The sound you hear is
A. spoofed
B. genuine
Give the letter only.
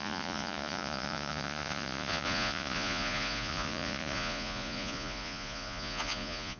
A